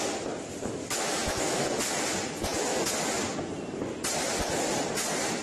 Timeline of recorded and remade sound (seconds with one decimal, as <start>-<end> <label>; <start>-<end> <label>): 0.0-0.8 recorded; 0.8-1.8 remade; 1.8-5.4 recorded